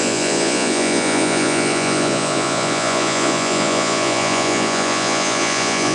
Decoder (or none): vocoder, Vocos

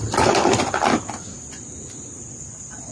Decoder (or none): none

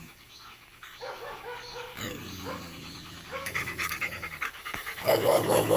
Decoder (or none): codec, DAC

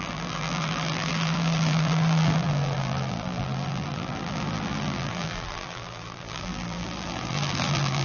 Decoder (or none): vocoder, BigVGAN v2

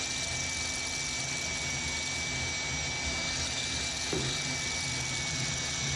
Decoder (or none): none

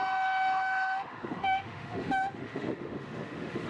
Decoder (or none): autoencoder, DAC-VAE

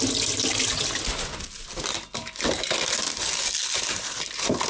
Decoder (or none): none